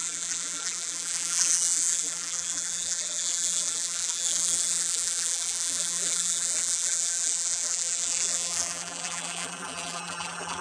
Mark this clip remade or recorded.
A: remade